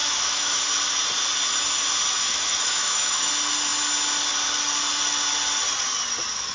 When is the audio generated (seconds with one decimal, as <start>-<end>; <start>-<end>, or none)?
0.0-0.6; 2.2-3.3